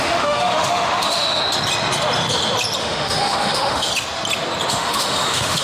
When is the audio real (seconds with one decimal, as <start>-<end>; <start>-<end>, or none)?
1.4-2.8; 3.9-4.7